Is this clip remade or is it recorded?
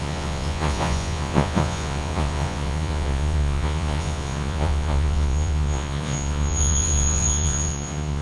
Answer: remade